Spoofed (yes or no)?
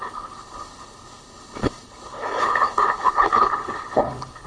yes